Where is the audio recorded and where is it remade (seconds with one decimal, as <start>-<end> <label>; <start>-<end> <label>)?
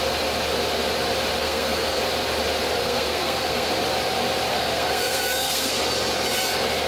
0.0-1.4 recorded; 1.4-2.0 remade; 2.0-2.8 recorded; 2.8-3.7 remade; 3.7-4.5 recorded; 4.5-5.8 remade; 5.8-6.9 recorded